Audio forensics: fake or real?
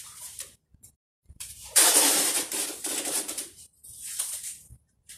fake